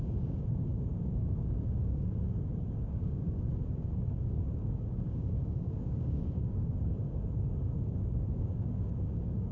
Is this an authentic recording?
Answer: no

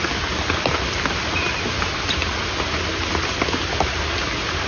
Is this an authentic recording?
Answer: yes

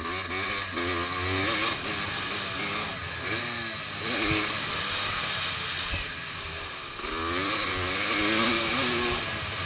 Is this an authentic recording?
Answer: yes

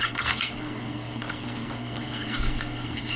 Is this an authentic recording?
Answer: no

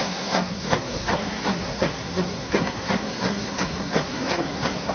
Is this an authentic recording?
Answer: no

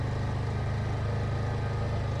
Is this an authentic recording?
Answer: yes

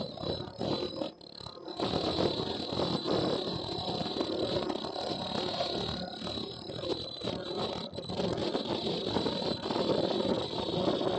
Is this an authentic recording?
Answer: yes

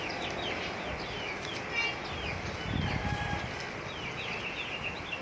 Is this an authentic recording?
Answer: yes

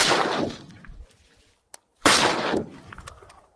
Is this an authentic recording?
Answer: yes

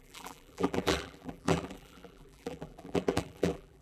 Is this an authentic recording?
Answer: no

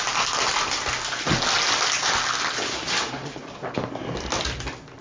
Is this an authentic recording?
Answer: yes